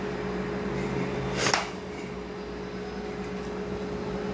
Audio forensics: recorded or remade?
recorded